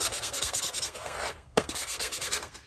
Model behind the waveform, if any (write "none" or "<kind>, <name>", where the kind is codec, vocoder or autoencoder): codec, SNAC